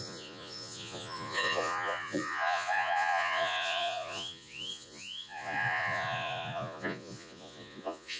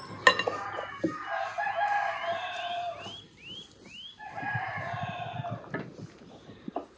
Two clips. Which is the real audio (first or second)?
second